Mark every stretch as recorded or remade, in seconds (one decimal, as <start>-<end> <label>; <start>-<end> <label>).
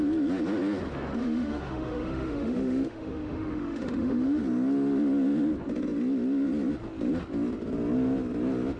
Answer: 0.0-1.2 recorded; 1.2-4.4 remade; 4.4-8.8 recorded